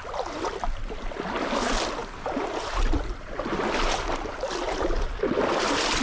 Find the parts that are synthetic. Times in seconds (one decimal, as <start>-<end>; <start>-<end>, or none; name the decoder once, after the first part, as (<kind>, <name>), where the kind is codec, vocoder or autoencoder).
none